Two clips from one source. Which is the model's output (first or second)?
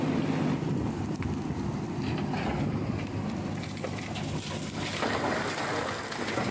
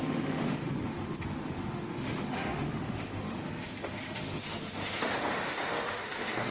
second